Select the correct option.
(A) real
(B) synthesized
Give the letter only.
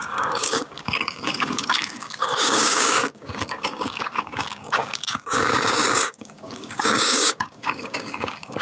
B